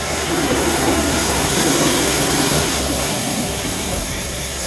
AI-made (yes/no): yes